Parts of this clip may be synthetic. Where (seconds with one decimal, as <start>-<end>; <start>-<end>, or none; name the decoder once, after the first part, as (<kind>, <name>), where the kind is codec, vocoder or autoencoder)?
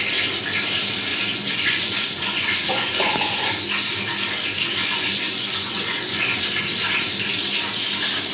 1.1-3.6 (vocoder, Vocos); 4.8-6.4